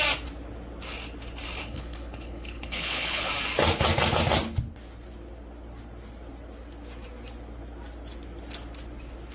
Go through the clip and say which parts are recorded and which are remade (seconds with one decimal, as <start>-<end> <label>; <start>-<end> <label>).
0.0-1.6 recorded; 1.6-3.3 remade; 3.3-9.3 recorded